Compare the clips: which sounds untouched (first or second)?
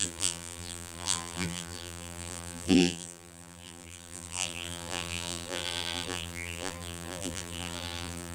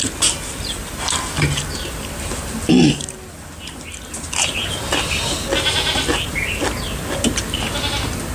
second